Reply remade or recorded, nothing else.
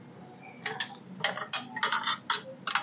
recorded